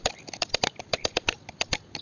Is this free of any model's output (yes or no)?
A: yes